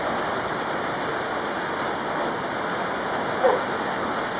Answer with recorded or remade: recorded